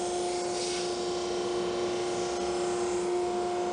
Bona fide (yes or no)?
yes